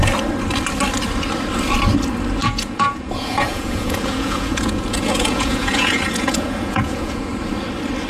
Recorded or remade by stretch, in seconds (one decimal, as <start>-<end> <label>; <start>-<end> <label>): 0.0-2.4 recorded; 2.4-7.3 remade; 7.3-8.1 recorded